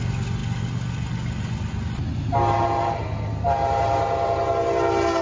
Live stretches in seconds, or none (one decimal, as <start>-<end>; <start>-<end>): 0.0-5.2